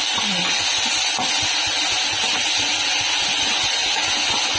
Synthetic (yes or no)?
no